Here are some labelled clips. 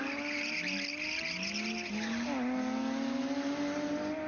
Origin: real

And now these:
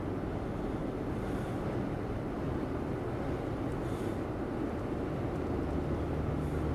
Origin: real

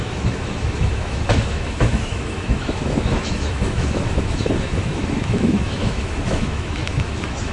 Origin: fake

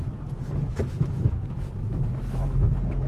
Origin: fake